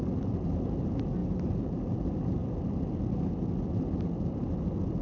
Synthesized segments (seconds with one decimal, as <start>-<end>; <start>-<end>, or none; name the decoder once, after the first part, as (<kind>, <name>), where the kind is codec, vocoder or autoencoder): none